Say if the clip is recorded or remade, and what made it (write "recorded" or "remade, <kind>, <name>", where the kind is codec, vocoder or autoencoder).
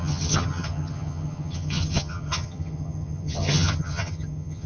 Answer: remade, vocoder, HiFi-GAN